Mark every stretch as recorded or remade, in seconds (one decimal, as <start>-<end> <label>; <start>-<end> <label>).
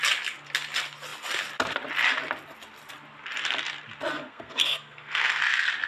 0.0-4.1 recorded; 4.1-5.4 remade; 5.4-5.9 recorded